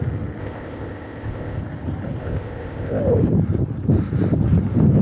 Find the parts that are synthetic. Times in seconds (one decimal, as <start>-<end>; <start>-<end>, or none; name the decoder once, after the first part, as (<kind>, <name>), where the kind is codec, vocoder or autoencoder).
0.4-1.6 (codec, ZipCodec); 2.2-3.0